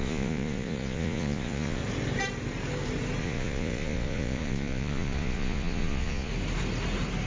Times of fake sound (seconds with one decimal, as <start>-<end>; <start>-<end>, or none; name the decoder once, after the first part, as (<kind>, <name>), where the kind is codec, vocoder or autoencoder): 0.0-1.8 (vocoder, Vocos); 3.2-6.3

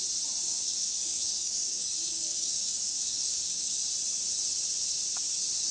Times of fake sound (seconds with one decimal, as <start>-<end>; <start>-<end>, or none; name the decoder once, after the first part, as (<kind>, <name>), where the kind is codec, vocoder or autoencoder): 0.4-3.8 (codec, DAC)

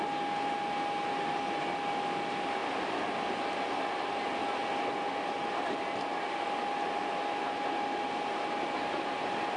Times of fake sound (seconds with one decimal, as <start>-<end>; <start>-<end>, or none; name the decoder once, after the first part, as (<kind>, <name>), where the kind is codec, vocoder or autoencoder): none

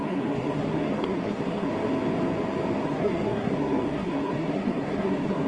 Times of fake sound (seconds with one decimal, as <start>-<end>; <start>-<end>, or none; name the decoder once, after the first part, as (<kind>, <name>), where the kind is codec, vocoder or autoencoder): 0.0-1.7 (codec, SNAC); 2.7-5.5

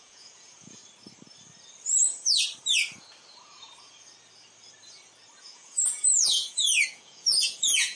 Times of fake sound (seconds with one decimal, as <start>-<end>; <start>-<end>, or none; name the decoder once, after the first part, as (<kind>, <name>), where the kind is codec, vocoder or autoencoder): 0.0-0.8 (vocoder, Vocos); 5.4-8.0